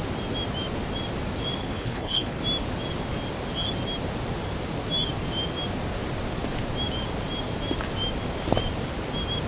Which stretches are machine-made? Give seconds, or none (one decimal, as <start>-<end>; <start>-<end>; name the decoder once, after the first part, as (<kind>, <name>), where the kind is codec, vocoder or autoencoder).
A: 1.6-2.4 (codec, HILCodec)